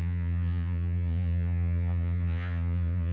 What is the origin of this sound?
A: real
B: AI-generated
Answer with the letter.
B